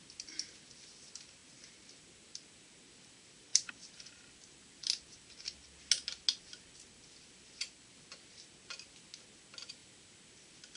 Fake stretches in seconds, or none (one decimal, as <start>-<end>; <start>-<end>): none